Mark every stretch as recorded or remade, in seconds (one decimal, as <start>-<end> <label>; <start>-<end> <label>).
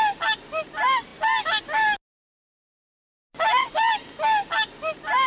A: 0.0-5.3 recorded